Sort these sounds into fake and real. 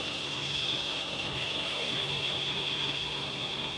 fake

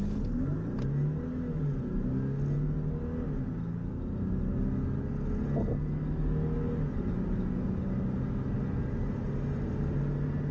real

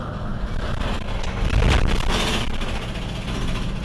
real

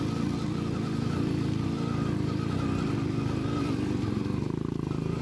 real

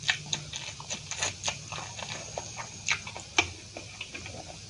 real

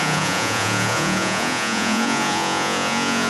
fake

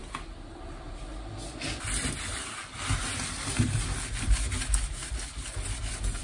real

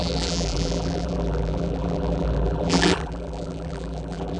fake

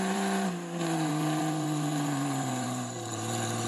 fake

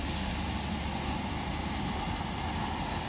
real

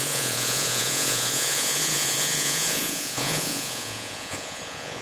fake